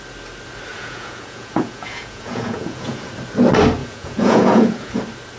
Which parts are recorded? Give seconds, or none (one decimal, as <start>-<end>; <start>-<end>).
0.0-0.7; 3.1-3.8; 5.0-5.4

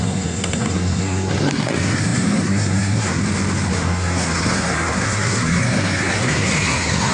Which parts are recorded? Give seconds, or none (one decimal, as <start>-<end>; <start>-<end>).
3.2-3.7

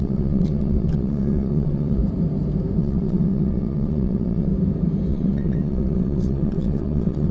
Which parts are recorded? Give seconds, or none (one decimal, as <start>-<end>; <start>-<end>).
2.0-2.8; 4.5-5.1

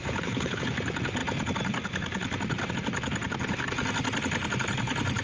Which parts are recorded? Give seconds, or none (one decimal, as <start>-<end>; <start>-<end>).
0.6-5.2

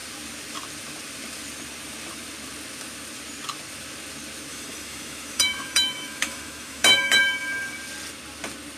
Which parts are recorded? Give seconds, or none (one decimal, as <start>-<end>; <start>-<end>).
0.0-4.5; 7.2-8.8